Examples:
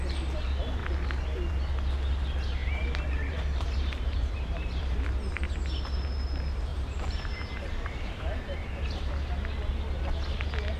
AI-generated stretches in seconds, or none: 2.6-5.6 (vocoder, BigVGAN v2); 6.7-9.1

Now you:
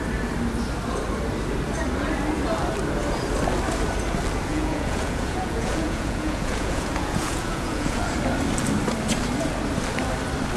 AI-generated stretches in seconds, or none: 4.5-8.0 (vocoder, Vocos)

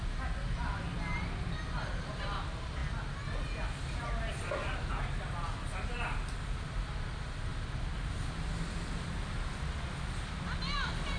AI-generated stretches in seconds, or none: none

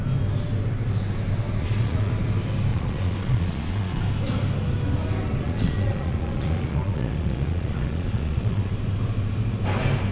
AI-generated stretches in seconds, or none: 1.6-2.1 (vocoder, Vocos); 2.7-4.0; 5.4-8.7

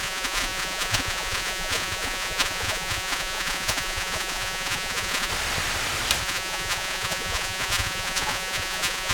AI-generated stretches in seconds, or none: 0.0-5.3 (vocoder, Vocos); 6.2-9.1

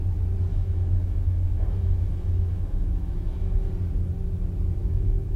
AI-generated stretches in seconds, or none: 0.5-3.7 (autoencoder, DAC-VAE); 4.8-5.4

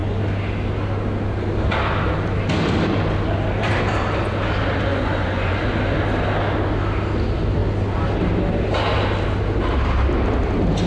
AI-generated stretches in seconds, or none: 4.9-5.6 (vocoder, Vocos)